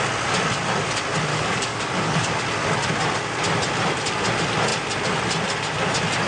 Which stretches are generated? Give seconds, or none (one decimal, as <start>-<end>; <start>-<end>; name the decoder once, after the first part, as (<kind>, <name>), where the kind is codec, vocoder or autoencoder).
1.3-2.4 (codec, DAC)